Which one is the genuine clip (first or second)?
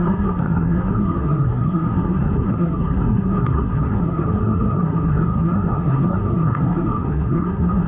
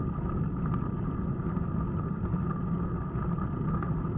second